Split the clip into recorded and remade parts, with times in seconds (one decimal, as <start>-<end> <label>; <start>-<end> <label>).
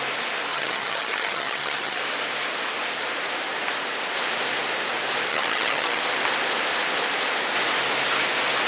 0.0-0.5 recorded; 0.5-2.0 remade; 2.0-5.3 recorded; 5.3-6.0 remade; 6.0-8.7 recorded